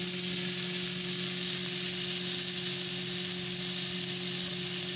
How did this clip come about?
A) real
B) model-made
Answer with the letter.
A